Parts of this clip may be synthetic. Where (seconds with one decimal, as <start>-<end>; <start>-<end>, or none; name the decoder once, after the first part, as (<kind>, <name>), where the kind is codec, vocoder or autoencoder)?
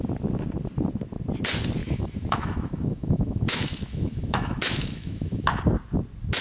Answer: 1.8-5.6 (autoencoder, DAC-VAE)